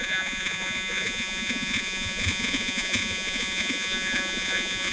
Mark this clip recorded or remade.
remade